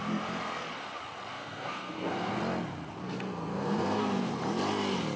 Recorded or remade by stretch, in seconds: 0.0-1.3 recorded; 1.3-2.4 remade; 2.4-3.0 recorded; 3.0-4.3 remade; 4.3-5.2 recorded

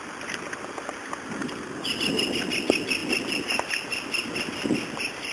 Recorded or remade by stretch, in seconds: 0.0-1.4 recorded; 1.4-2.4 remade; 2.4-5.3 recorded

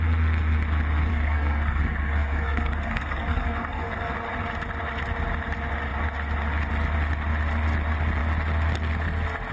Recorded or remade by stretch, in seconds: 0.0-1.1 recorded; 1.1-4.1 remade; 4.1-9.5 recorded

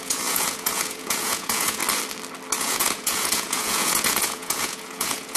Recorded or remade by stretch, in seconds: 0.0-1.8 remade; 1.8-2.6 recorded; 2.6-5.4 remade